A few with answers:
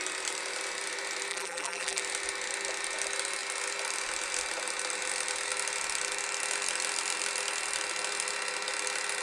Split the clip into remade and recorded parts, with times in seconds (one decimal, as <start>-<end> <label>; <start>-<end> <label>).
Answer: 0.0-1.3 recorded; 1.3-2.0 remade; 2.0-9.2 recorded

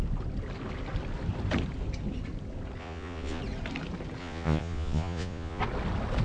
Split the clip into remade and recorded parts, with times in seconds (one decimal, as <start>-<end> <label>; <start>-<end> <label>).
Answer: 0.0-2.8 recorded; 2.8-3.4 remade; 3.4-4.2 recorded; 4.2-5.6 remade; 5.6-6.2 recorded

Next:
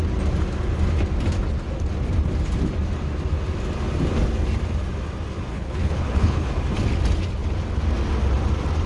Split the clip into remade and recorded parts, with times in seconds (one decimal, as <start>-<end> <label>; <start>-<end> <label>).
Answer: 0.0-5.5 recorded; 5.5-6.5 remade; 6.5-8.9 recorded